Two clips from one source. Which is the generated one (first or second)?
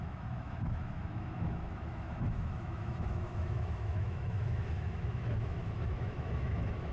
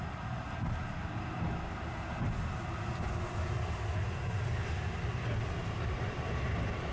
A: first